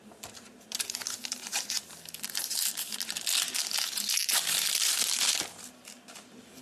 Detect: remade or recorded recorded